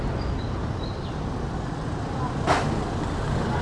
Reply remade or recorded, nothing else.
recorded